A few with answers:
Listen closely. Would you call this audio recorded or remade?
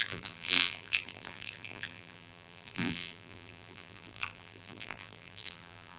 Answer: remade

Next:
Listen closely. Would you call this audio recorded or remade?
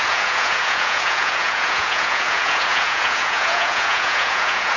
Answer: remade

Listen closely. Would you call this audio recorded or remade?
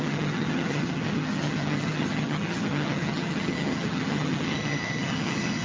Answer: remade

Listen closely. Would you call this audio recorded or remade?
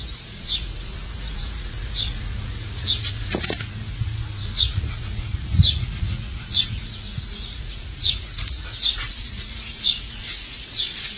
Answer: remade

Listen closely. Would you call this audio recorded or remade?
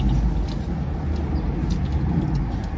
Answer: recorded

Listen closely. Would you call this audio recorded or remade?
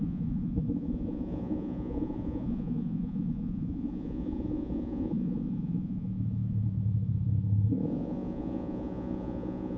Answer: remade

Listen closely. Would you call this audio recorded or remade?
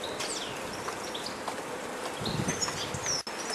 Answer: recorded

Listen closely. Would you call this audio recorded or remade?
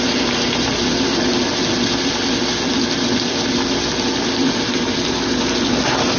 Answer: recorded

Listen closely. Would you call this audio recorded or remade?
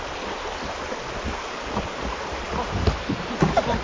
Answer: recorded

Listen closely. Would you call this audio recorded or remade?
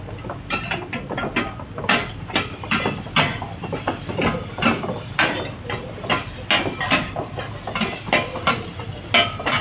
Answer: recorded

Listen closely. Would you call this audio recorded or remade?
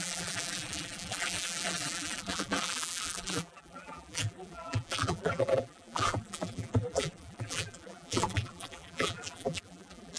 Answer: remade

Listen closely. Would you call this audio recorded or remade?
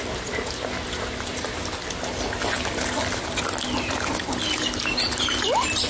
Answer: recorded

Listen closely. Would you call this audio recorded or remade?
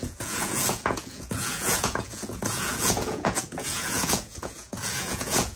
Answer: remade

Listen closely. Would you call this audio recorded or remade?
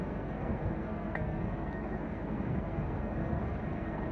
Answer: remade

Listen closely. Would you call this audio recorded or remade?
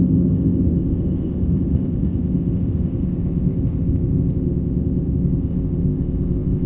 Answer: remade